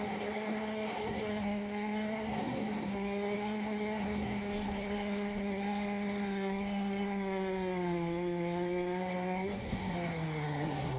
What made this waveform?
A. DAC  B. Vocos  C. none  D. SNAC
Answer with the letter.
D